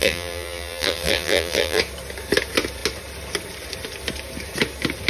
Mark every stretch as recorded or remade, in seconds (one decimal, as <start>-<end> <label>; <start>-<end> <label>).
0.0-1.8 remade; 1.8-5.1 recorded

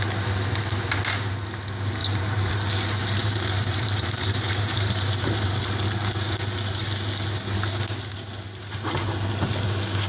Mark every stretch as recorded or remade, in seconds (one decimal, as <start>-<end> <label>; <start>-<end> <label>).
0.0-2.0 recorded; 2.0-2.5 remade; 2.5-3.2 recorded; 3.2-5.6 remade; 5.6-10.1 recorded

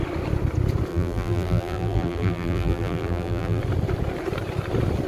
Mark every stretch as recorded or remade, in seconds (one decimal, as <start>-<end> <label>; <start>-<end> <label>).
0.0-0.9 recorded; 0.9-3.6 remade; 3.6-5.1 recorded

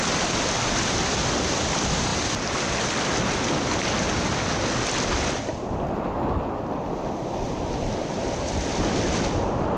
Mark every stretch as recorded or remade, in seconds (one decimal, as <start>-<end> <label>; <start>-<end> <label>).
0.0-9.8 recorded

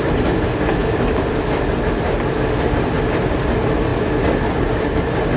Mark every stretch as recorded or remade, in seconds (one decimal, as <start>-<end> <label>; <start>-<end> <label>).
0.0-0.8 recorded; 0.8-1.6 remade; 1.6-5.4 recorded